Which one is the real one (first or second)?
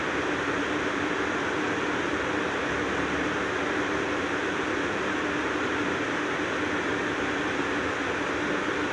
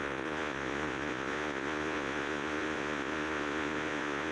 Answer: first